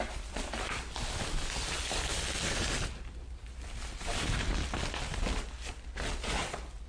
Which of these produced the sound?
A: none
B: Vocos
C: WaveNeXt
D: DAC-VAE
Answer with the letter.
A